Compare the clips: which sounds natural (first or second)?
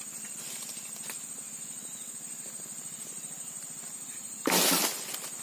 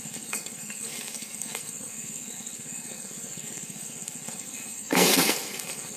first